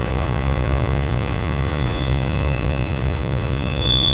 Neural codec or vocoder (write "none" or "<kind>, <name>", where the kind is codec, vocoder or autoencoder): vocoder, Vocos